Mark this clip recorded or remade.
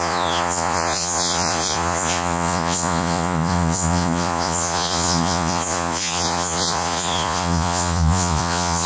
remade